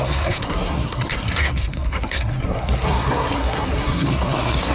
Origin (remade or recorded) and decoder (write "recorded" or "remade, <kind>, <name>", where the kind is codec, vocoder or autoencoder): remade, codec, SNAC